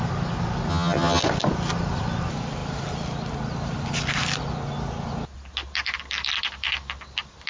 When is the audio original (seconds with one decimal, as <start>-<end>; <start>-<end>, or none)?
0.0-0.7; 1.2-7.5